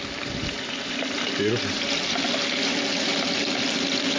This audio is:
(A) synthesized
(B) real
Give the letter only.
B